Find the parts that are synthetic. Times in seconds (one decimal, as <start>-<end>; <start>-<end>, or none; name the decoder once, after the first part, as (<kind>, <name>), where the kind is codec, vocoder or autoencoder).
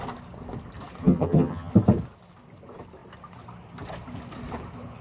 1.0-1.7 (vocoder, HiFi-GAN)